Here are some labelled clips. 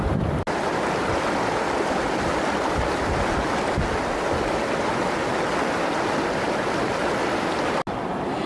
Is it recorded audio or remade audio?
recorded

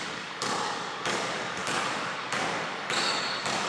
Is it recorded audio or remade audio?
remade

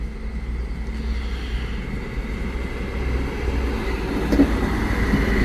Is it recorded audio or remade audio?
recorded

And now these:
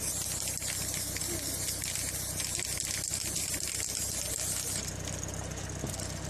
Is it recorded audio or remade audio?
recorded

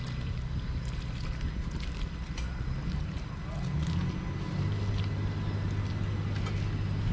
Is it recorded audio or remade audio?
recorded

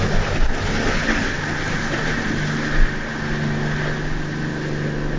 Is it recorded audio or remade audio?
recorded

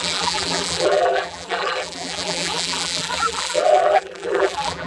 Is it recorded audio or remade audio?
remade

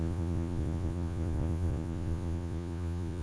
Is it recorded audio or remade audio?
remade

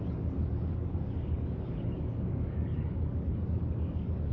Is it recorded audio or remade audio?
remade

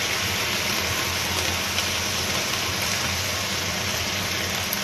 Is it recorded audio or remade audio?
recorded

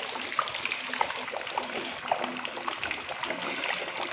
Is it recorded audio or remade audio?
recorded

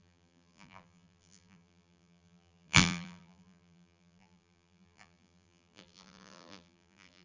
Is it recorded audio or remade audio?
remade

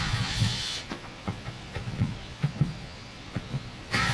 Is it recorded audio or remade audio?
remade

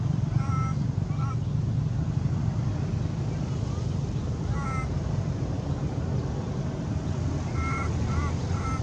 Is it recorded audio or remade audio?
recorded